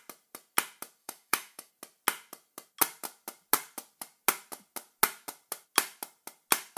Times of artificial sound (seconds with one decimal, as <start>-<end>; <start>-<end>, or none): 1.0-1.7